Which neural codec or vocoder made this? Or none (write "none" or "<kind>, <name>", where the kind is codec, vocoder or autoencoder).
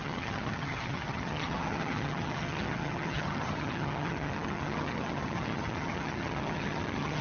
vocoder, HiFi-GAN